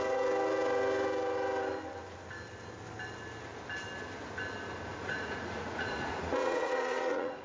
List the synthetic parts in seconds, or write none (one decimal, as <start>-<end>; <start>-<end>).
4.9-7.4

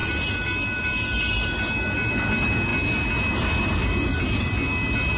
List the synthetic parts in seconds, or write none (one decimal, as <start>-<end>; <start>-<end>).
none

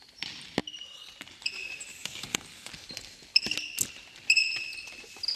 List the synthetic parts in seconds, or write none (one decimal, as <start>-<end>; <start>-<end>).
1.9-2.7

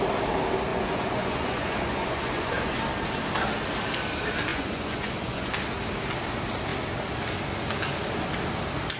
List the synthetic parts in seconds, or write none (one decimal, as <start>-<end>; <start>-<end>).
0.7-2.8; 4.5-5.5

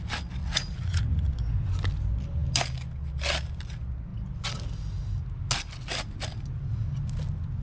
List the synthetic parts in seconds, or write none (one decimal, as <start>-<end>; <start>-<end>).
0.4-1.0

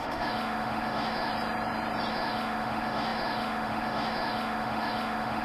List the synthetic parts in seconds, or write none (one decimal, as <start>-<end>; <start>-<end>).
0.0-1.3; 2.1-5.4